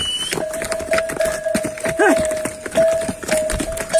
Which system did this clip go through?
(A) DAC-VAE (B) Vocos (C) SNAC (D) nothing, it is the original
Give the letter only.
D